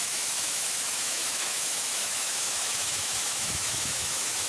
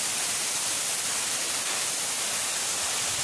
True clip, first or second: second